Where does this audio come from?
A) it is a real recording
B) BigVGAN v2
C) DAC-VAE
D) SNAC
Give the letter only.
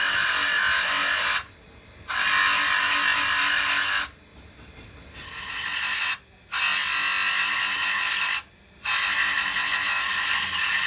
A